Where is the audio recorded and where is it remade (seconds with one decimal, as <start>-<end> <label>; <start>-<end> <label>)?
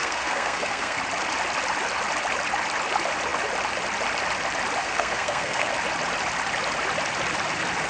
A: 0.0-1.0 remade; 1.0-4.8 recorded; 4.8-5.7 remade; 5.7-7.9 recorded